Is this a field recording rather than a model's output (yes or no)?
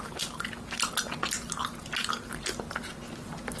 yes